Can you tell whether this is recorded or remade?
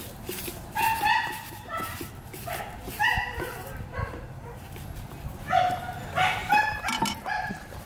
remade